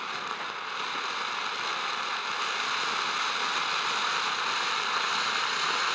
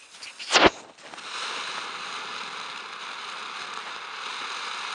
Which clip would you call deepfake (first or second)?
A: second